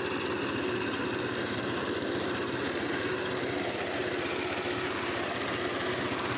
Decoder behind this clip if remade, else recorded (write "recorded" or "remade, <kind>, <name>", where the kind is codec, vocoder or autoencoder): recorded